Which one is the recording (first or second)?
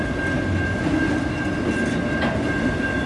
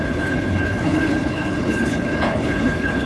first